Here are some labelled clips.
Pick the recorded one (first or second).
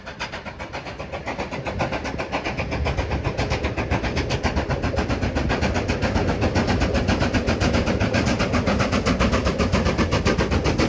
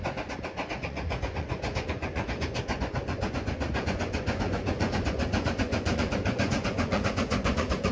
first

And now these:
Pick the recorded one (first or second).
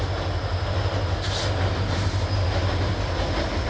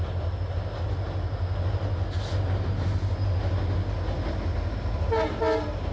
second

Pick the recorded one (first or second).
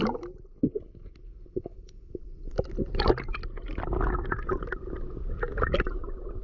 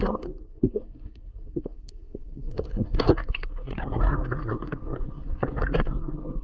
first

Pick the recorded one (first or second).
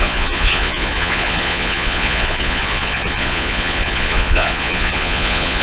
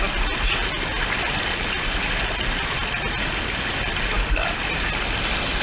second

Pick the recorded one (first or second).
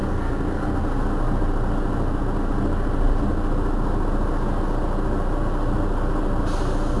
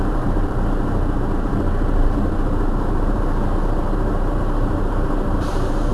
first